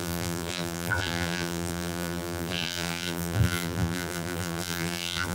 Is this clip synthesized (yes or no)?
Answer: yes